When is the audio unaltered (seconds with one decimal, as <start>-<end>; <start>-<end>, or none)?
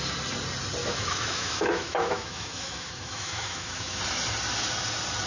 0.0-0.8; 4.0-5.3